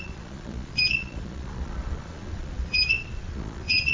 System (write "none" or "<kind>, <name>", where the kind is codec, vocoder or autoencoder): vocoder, Vocos